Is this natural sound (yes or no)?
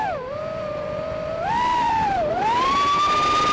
no